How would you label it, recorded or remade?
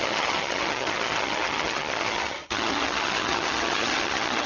remade